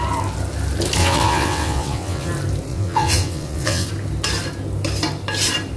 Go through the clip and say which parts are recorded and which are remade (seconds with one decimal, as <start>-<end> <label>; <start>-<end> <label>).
0.0-1.0 recorded; 1.0-2.3 remade; 2.3-2.7 recorded; 2.7-3.9 remade; 3.9-5.8 recorded